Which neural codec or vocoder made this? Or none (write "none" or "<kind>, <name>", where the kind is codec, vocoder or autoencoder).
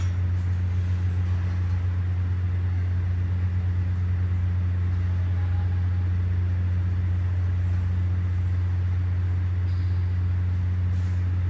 none